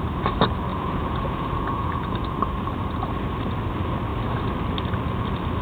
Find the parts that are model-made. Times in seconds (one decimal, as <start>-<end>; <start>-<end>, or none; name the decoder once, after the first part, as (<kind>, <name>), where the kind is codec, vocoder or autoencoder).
0.7-2.5 (vocoder, Vocos)